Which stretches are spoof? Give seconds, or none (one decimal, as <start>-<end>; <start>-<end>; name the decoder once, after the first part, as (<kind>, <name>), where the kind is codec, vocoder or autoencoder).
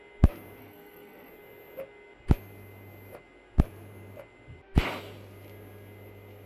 0.6-1.3 (codec, SNAC)